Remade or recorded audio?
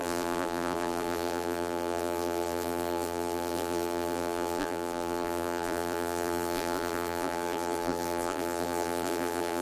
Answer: remade